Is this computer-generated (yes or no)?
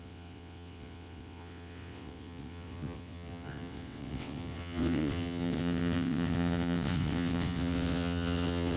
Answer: yes